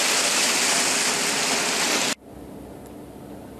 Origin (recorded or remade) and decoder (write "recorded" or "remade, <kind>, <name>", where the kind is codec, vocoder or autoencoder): recorded